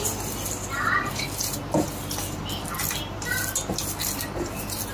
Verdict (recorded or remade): recorded